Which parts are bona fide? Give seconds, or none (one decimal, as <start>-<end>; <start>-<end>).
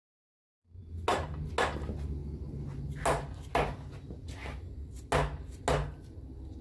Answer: 0.0-6.6